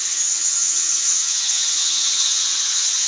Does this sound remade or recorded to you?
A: remade